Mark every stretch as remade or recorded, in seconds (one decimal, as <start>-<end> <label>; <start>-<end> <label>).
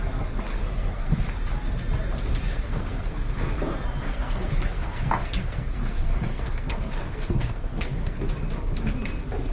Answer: 0.0-0.5 recorded; 0.5-1.2 remade; 1.2-2.5 recorded; 2.5-3.6 remade; 3.6-4.0 recorded; 4.0-8.3 remade; 8.3-9.5 recorded